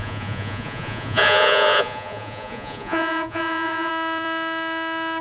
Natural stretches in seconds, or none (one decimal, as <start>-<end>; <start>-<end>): 3.9-5.2